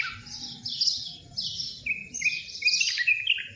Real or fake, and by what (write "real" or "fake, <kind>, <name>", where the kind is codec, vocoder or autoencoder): real